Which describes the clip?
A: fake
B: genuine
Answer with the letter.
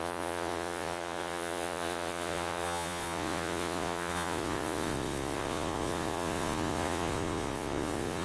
A